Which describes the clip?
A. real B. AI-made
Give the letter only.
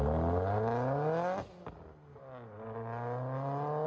A